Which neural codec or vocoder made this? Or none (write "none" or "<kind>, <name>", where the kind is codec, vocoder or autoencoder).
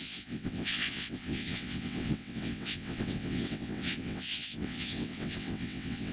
vocoder, WaveNeXt